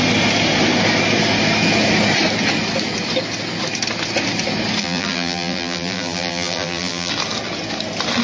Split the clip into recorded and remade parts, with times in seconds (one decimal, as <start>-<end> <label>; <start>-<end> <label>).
0.0-4.8 recorded; 4.8-7.1 remade; 7.1-8.2 recorded